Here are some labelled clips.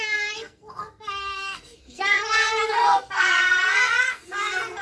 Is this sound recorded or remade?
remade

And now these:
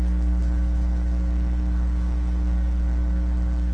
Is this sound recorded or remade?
remade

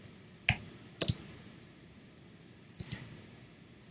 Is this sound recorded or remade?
recorded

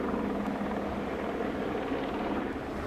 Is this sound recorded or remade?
recorded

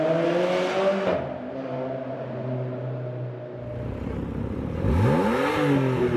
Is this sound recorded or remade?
recorded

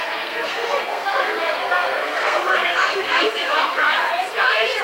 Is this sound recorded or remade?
remade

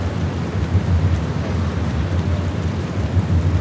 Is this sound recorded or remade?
recorded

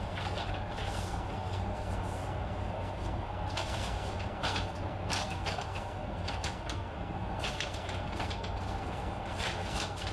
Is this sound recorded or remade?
remade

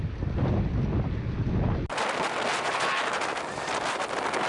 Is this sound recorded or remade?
recorded